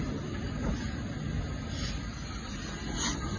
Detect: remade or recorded recorded